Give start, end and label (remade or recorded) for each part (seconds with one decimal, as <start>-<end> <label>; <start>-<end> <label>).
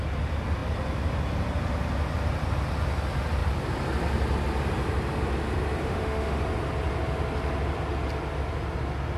0.0-5.8 recorded; 5.8-6.4 remade; 6.4-9.2 recorded